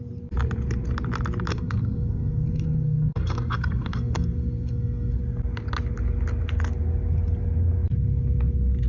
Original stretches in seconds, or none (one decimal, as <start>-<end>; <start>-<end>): 0.0-1.5; 5.2-8.9